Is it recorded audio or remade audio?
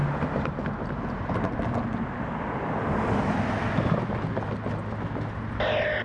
recorded